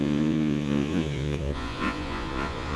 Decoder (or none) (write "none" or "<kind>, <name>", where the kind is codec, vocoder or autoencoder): vocoder, Vocos